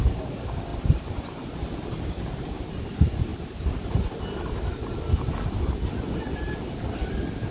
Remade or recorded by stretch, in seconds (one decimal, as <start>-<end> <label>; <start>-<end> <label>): 0.0-0.7 recorded; 0.7-2.7 remade; 2.7-3.3 recorded; 3.3-3.9 remade; 3.9-7.5 recorded